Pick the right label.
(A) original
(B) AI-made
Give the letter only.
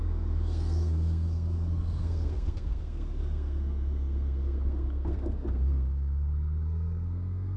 B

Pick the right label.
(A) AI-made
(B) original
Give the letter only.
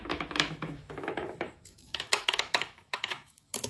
A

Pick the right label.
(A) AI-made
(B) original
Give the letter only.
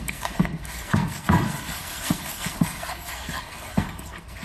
A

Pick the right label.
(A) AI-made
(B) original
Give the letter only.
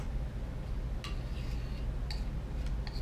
B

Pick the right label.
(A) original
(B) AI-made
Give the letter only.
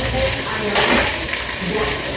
A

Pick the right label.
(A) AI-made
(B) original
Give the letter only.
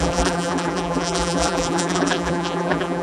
A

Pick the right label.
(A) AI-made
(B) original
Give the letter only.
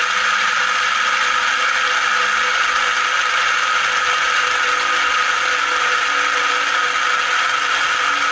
B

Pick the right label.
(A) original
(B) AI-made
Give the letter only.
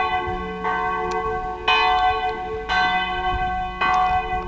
A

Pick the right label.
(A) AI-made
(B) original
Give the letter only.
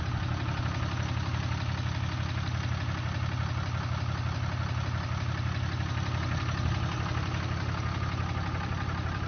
B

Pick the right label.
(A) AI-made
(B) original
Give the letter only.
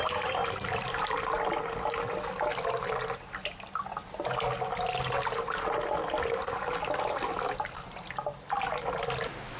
B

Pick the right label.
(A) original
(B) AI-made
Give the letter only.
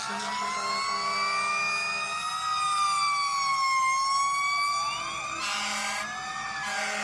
A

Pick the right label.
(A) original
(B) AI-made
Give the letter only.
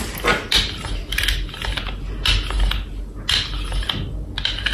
A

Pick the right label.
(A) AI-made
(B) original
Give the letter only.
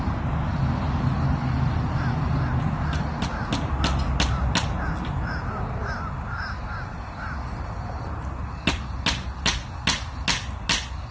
B